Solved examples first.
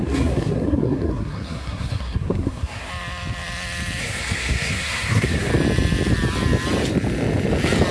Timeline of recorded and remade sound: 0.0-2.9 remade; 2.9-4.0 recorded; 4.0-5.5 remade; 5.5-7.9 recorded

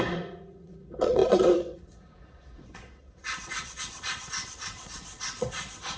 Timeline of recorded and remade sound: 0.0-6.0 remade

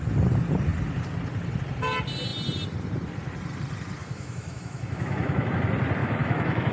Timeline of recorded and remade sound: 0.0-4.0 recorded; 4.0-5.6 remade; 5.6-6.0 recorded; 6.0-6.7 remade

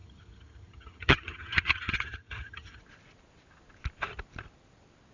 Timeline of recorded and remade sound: 0.0-2.8 remade; 2.8-5.1 recorded

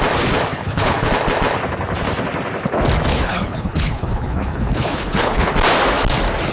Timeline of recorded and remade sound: 0.0-0.5 recorded; 0.5-1.1 remade; 1.1-3.1 recorded; 3.1-5.5 remade; 5.5-6.5 recorded

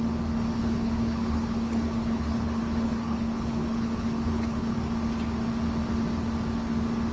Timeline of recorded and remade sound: 0.0-0.6 recorded; 0.6-4.9 remade; 4.9-7.1 recorded

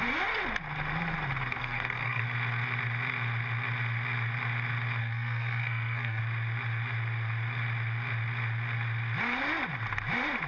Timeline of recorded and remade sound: 0.0-1.6 recorded; 1.6-2.2 remade; 2.2-5.0 recorded; 5.0-6.2 remade; 6.2-10.5 recorded

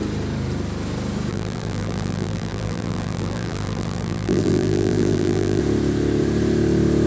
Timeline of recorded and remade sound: 0.0-1.3 recorded; 1.3-5.6 remade; 5.6-7.1 recorded